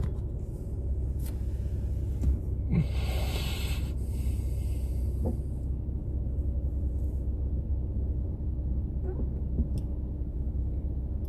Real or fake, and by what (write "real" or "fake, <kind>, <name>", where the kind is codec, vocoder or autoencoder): real